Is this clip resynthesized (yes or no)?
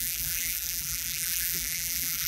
yes